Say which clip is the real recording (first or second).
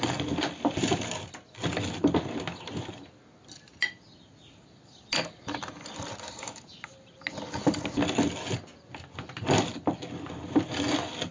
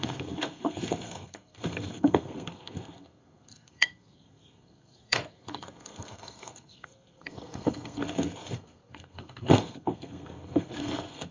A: first